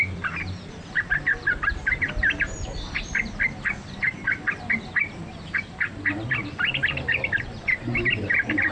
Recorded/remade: recorded